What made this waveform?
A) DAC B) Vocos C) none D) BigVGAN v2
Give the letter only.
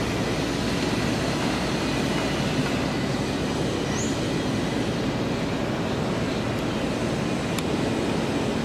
C